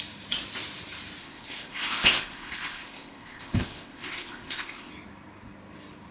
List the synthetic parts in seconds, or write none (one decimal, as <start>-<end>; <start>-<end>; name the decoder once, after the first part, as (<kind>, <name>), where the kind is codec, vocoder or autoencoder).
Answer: 1.2-4.9 (codec, ZipCodec)